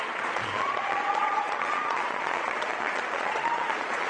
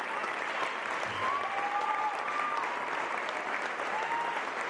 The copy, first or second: first